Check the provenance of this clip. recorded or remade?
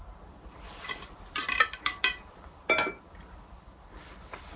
remade